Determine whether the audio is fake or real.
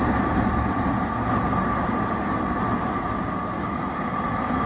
real